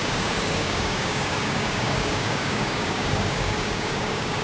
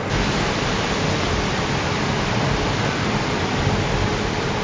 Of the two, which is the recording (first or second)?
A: second